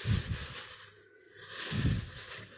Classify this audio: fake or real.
real